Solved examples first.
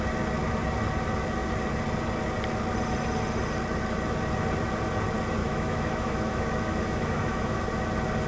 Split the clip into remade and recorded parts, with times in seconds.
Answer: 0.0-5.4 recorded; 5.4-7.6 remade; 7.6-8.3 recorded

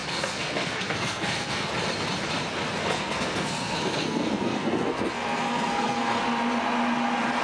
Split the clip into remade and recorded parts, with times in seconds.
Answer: 0.0-1.7 remade; 1.7-2.8 recorded; 2.8-6.2 remade; 6.2-7.4 recorded

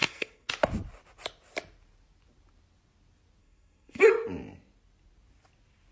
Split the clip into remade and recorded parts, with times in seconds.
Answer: 0.0-0.5 remade; 0.5-3.4 recorded; 3.4-4.1 remade; 4.1-5.9 recorded